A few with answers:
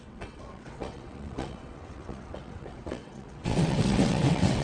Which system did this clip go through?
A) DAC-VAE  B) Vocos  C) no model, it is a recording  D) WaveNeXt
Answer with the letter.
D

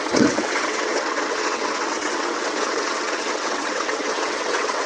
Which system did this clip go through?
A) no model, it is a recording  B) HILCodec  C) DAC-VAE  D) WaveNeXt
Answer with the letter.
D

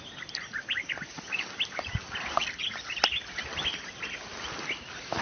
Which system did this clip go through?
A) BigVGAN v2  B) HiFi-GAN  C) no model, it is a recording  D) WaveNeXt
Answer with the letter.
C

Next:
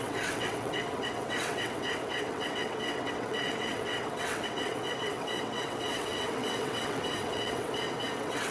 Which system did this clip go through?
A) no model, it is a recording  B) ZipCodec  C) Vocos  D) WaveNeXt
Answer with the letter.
D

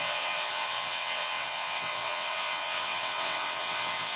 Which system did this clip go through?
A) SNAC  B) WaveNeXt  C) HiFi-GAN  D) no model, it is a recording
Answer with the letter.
B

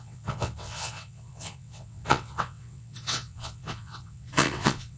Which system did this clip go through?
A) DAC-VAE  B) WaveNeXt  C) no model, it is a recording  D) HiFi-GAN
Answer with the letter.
B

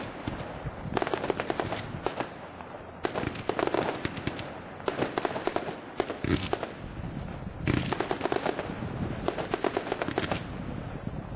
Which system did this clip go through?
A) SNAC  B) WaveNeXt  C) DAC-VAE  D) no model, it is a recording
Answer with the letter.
D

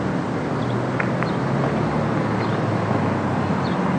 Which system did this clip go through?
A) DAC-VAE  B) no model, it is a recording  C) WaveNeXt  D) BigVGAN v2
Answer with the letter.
B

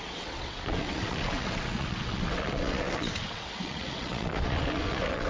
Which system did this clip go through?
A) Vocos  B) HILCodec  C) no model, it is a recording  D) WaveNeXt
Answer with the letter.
D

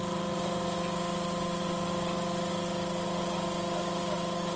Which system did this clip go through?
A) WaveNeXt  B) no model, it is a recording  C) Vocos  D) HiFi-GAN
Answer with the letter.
B